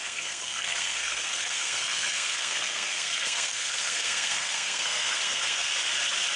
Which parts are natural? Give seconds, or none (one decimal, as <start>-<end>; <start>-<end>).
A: 5.7-6.4